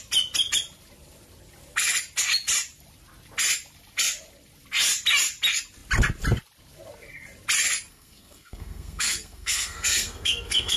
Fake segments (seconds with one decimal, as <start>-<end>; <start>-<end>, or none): 7.9-10.8